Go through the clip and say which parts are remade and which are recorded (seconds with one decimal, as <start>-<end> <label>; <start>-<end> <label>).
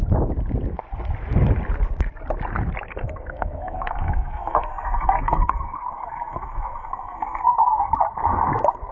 0.0-2.9 recorded; 2.9-7.9 remade; 7.9-8.9 recorded